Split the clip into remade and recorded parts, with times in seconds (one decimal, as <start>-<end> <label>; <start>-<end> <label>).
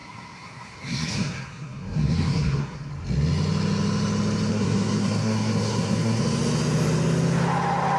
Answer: 0.0-2.9 remade; 2.9-4.5 recorded; 4.5-6.2 remade; 6.2-8.0 recorded